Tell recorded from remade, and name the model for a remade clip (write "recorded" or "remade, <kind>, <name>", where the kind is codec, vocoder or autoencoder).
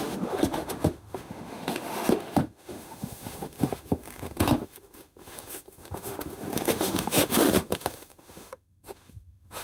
remade, autoencoder, DAC-VAE